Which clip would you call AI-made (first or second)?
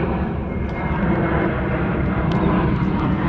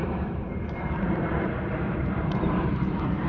second